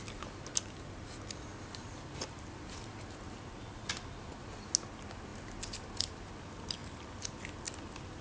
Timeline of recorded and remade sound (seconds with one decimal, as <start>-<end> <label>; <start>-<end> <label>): 0.0-8.2 recorded